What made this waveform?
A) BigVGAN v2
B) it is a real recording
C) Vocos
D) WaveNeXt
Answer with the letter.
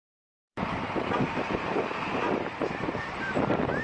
A